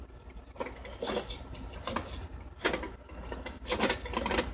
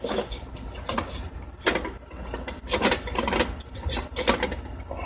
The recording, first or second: second